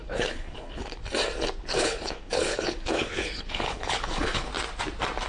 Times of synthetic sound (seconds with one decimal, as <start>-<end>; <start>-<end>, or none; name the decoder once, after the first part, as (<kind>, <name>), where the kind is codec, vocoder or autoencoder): 0.0-1.0 (codec, HILCodec); 1.6-4.5